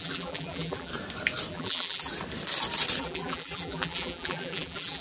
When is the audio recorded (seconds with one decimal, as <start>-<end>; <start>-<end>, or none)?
0.9-1.5; 2.1-3.0